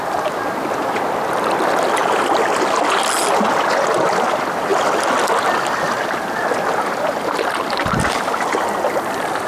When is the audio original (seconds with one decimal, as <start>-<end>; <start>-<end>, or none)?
0.0-9.5